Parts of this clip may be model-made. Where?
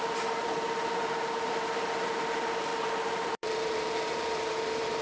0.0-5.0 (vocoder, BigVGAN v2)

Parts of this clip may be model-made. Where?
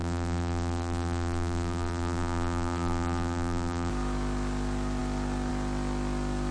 0.0-3.9 (vocoder, BigVGAN v2)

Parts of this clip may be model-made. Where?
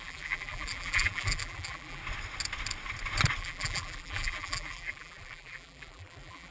0.0-2.0 (vocoder, BigVGAN v2); 3.4-6.5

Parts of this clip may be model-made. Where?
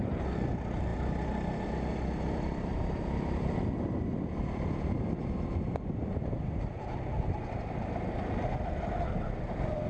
2.7-3.7 (vocoder, BigVGAN v2)